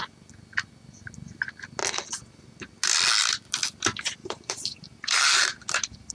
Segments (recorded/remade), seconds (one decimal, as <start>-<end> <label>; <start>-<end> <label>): 0.0-4.2 recorded; 4.2-6.1 remade

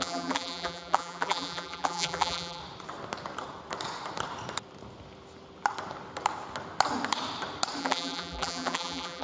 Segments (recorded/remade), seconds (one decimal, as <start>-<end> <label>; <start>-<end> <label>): 0.0-2.6 remade; 2.6-7.8 recorded; 7.8-9.2 remade